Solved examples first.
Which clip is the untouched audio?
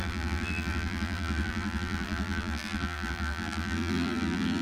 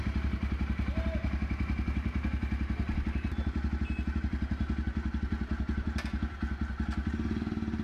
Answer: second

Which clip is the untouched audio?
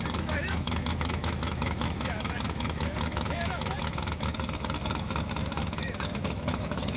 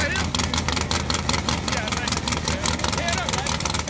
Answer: second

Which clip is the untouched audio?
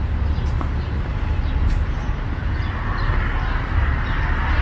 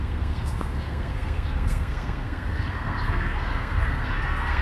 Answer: first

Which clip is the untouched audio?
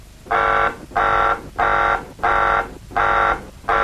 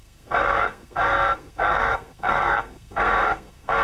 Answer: first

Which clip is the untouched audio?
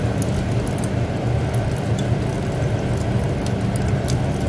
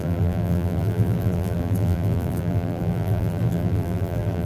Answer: first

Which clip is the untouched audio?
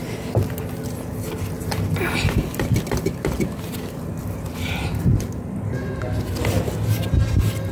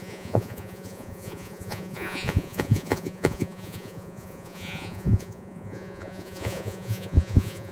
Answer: first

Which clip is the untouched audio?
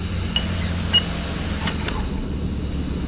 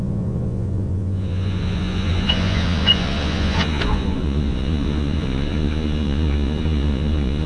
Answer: first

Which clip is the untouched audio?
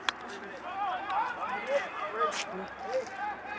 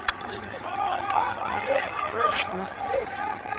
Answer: first